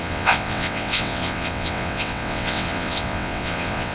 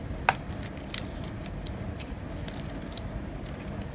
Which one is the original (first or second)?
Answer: second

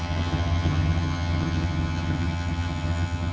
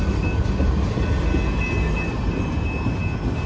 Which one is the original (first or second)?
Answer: second